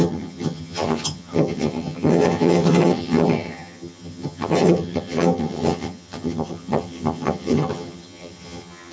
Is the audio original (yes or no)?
no